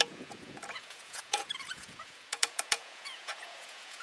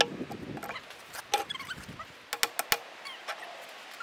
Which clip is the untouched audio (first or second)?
second